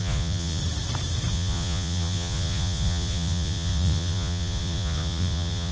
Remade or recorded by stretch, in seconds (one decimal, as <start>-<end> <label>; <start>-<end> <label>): 0.0-0.6 remade; 0.6-1.3 recorded; 1.3-5.7 remade